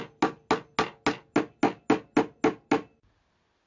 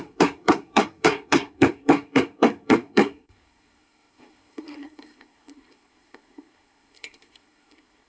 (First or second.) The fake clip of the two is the second